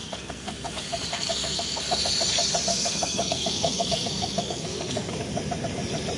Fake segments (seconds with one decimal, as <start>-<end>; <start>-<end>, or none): 0.0-0.7; 1.1-1.8; 2.7-5.1